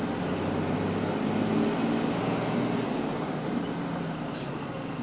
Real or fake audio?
real